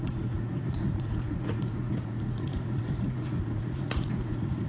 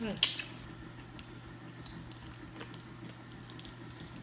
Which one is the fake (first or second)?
first